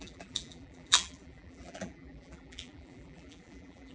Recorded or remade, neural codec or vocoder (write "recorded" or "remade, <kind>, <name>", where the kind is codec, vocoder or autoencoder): remade, vocoder, BigVGAN v2